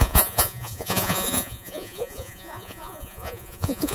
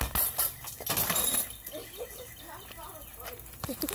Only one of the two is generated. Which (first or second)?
first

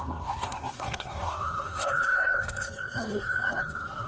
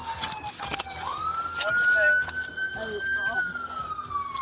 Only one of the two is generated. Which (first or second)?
first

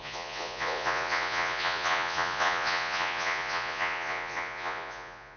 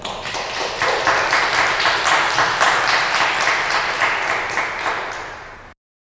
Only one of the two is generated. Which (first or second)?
first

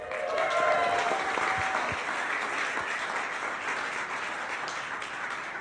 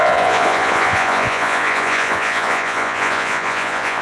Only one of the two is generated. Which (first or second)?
second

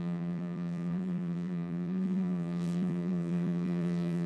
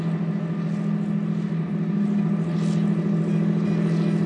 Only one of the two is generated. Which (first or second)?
first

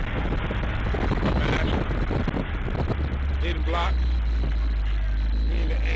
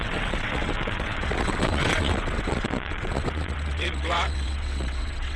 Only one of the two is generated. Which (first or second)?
second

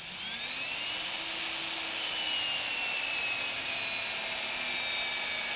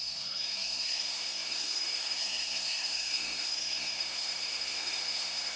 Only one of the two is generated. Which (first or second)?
second